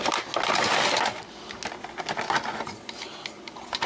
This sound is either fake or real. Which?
real